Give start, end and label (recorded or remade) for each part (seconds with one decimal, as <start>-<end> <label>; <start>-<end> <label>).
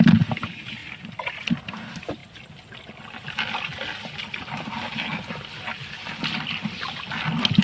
0.0-7.6 recorded